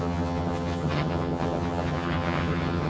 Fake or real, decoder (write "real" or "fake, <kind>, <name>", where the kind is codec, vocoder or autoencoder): fake, vocoder, HiFi-GAN